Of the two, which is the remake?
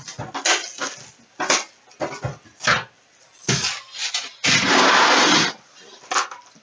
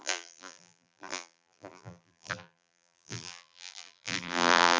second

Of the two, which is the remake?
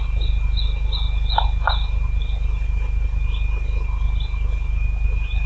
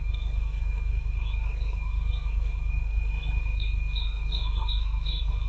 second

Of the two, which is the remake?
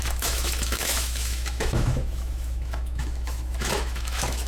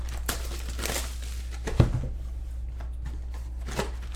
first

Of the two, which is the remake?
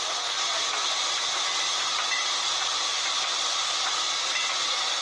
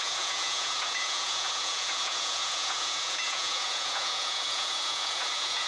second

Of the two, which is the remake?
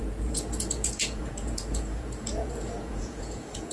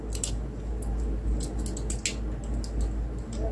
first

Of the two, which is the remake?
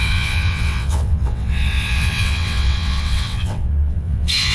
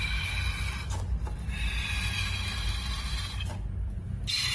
first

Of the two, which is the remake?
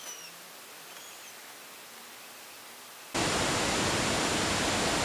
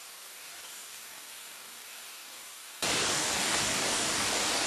second